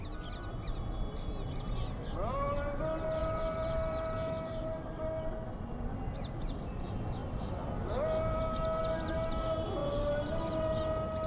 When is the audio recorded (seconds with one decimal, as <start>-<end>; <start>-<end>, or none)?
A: 0.0-3.2; 5.3-9.8; 10.4-11.3